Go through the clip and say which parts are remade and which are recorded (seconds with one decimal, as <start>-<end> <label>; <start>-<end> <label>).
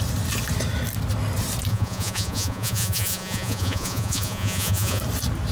0.0-1.7 recorded; 1.7-5.0 remade; 5.0-5.5 recorded